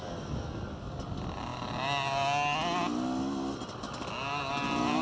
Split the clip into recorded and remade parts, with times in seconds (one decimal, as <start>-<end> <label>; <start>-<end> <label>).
0.0-5.0 recorded